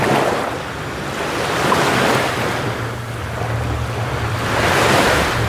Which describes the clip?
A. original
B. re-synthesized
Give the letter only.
A